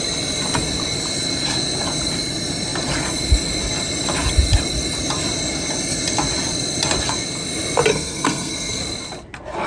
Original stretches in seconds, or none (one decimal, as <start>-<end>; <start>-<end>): 0.0-7.9; 8.8-9.7